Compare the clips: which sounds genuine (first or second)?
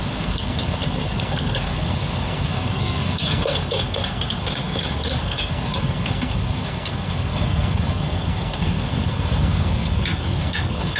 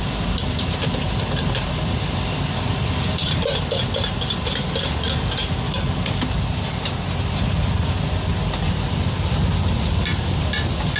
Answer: second